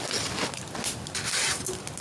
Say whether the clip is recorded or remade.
recorded